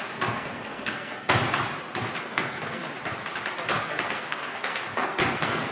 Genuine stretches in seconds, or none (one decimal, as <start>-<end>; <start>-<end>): 1.4-2.2; 2.8-3.8